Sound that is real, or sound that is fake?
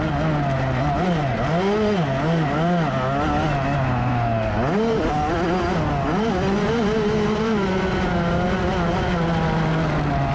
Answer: real